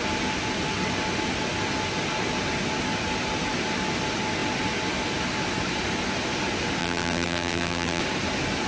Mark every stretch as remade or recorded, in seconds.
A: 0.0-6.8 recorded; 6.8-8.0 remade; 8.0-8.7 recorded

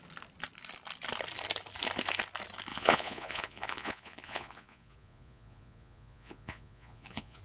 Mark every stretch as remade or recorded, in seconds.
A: 0.0-2.7 recorded; 2.7-7.4 remade

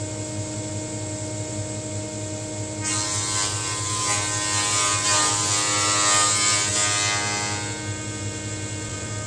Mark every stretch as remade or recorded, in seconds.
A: 0.0-9.3 recorded